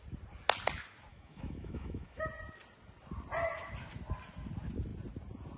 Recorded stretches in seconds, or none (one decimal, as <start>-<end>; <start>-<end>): 0.0-1.1; 2.2-5.6